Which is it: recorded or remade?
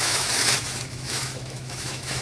remade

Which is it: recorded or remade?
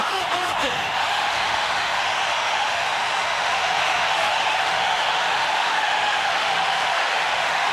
remade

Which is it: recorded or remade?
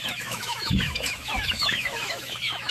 remade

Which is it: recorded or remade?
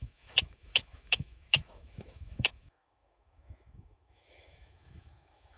remade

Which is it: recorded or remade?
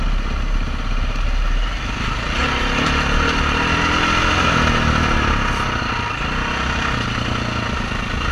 recorded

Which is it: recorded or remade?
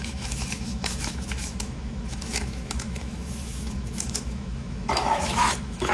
remade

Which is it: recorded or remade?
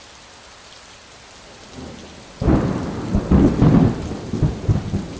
recorded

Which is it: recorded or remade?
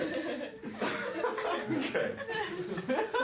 recorded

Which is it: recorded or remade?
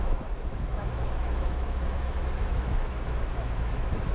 remade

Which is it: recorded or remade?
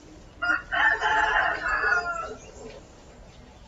recorded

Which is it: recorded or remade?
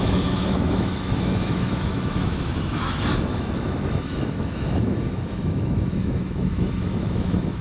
remade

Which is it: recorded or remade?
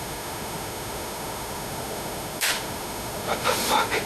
remade